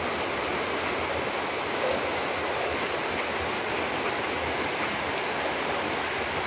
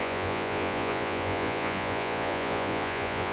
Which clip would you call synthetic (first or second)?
second